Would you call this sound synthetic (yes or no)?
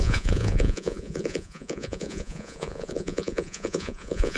yes